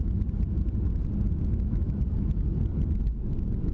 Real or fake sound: real